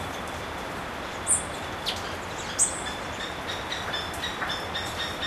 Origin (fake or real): real